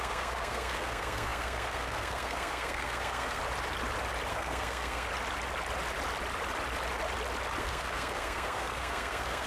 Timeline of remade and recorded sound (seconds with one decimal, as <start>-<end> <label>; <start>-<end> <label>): 0.0-3.4 remade; 3.4-4.3 recorded; 4.3-5.1 remade; 5.1-7.6 recorded; 7.6-9.5 remade